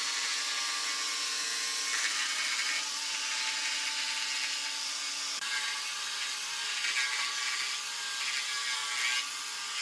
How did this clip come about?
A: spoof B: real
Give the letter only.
B